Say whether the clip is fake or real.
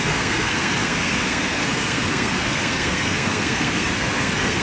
fake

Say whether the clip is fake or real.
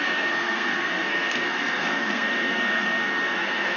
fake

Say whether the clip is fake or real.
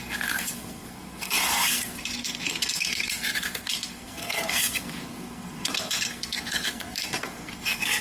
fake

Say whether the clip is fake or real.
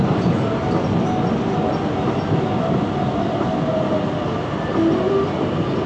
real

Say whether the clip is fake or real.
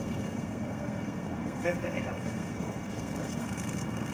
fake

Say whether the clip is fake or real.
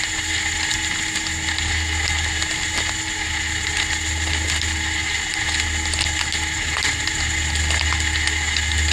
real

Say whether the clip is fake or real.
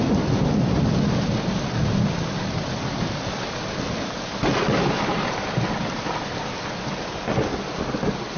real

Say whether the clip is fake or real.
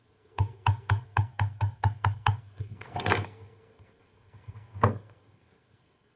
fake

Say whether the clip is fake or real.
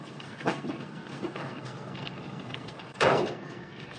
fake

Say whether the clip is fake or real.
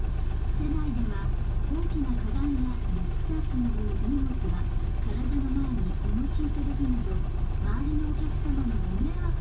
real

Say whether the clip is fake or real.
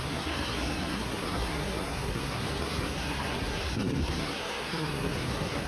fake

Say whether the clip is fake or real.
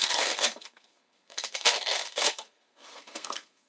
fake